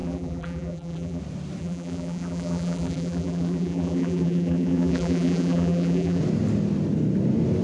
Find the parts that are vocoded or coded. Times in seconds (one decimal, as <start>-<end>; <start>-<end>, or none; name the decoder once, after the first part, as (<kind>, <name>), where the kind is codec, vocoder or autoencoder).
0.0-1.2 (vocoder, BigVGAN v2); 1.6-6.2